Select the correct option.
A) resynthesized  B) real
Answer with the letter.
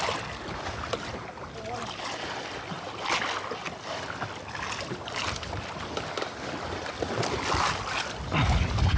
B